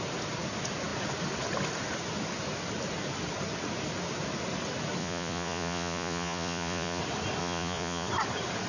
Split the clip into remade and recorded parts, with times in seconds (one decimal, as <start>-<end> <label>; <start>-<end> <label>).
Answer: 0.0-5.0 recorded; 5.0-7.0 remade; 7.0-7.4 recorded; 7.4-8.1 remade; 8.1-8.7 recorded